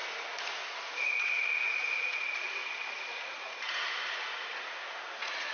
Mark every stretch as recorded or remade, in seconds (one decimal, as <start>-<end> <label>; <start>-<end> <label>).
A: 0.0-5.5 remade